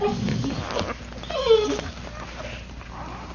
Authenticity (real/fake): real